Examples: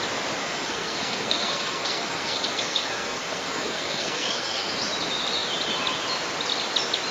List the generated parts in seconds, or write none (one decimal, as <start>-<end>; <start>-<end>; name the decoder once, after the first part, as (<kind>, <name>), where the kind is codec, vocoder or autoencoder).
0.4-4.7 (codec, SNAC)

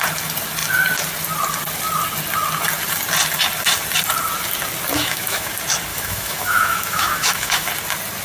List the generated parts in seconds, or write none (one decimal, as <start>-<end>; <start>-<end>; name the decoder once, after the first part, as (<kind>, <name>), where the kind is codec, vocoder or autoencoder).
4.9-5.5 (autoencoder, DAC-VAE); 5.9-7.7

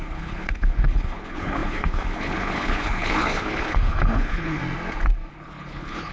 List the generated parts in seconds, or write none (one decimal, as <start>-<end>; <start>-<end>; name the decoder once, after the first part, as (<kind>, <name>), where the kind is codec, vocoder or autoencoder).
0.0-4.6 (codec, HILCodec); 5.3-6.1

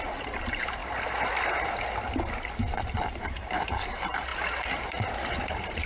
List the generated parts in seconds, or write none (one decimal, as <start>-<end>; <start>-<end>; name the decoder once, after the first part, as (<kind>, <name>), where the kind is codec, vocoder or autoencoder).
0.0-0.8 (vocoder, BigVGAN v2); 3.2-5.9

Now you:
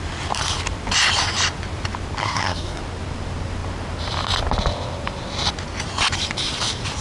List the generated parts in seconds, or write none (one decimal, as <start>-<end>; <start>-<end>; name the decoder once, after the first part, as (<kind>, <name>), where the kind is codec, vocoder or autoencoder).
2.2-2.8 (codec, SNAC)

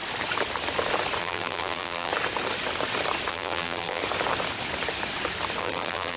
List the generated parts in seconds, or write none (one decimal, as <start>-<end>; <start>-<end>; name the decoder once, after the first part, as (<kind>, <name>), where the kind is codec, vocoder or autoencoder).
1.2-2.1 (vocoder, BigVGAN v2); 3.3-4.0; 5.6-6.2